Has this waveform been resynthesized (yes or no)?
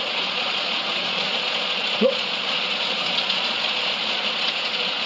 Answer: yes